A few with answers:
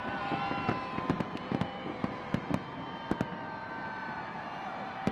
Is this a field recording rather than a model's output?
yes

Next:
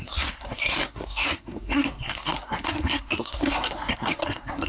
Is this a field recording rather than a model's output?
no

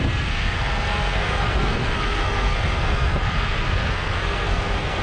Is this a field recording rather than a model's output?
no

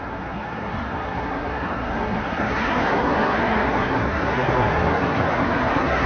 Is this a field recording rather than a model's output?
no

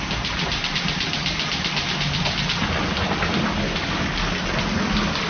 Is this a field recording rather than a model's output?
yes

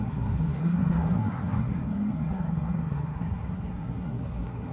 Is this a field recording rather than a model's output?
no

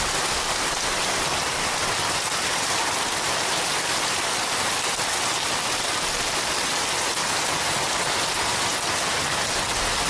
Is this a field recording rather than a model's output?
yes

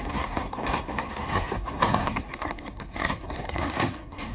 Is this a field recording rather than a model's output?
no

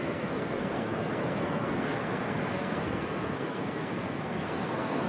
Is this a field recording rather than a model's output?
no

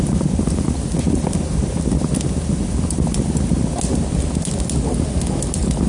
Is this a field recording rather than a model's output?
yes